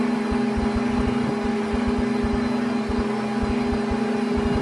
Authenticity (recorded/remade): recorded